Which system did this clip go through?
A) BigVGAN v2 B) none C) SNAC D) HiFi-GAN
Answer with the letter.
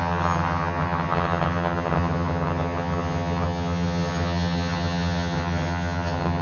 D